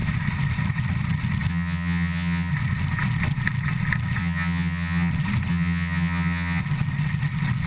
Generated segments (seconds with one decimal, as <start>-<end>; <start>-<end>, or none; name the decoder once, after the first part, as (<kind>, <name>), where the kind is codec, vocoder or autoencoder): 1.5-2.5 (vocoder, HiFi-GAN); 4.2-5.1; 5.5-6.6